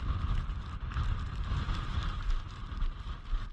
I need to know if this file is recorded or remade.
recorded